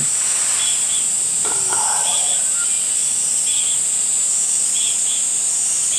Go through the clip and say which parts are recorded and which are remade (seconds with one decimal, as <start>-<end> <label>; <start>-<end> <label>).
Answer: 0.0-6.0 recorded